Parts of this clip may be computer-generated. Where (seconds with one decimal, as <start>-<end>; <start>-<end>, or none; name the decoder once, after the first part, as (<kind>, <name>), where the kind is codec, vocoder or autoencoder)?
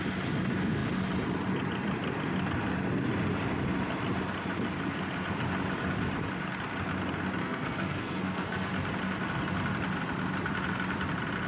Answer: 7.4-8.7 (codec, SNAC)